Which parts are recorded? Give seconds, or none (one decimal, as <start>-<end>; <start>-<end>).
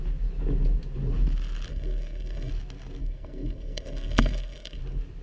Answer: 0.0-1.7; 2.5-3.0; 4.8-5.2